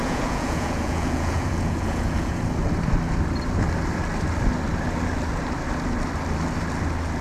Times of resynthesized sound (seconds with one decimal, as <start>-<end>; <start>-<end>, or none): 0.0-2.4